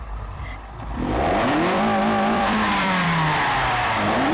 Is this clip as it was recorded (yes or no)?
no